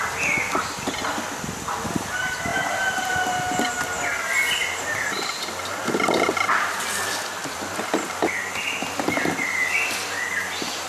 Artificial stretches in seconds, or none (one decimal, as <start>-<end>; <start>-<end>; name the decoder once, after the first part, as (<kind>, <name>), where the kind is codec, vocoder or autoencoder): none